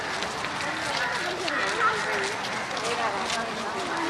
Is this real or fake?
real